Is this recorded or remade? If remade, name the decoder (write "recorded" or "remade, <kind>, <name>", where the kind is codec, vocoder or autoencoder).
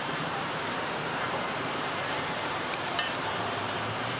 remade, vocoder, BigVGAN v2